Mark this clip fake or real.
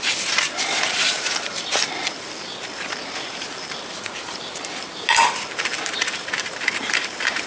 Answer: fake